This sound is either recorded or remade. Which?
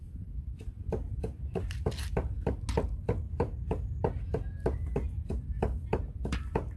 recorded